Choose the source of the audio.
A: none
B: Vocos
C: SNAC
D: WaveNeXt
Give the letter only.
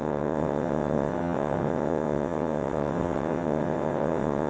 D